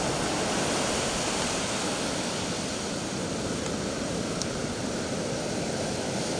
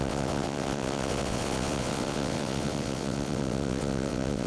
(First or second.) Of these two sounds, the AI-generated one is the second